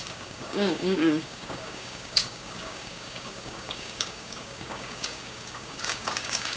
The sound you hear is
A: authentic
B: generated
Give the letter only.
B